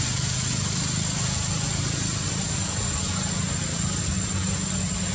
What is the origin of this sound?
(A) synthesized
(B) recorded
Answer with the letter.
B